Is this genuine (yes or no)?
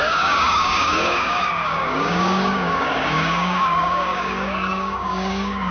no